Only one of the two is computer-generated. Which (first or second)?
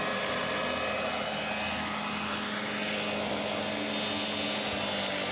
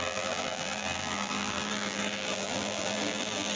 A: second